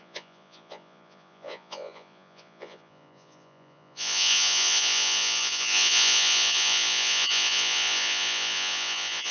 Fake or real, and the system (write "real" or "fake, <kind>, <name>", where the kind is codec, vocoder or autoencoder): fake, vocoder, Vocos